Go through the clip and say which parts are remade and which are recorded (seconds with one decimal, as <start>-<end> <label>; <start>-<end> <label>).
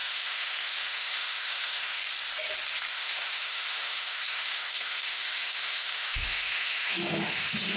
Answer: 0.0-2.0 remade; 2.0-2.9 recorded; 2.9-7.8 remade